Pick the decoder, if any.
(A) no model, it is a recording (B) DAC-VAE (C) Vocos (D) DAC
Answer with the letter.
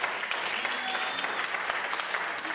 A